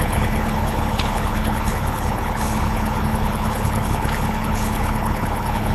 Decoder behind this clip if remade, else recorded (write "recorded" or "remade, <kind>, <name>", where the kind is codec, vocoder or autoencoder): remade, codec, HILCodec